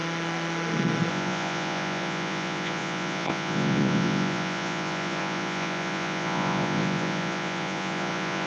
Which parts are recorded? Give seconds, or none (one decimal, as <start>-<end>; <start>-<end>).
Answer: 0.0-1.1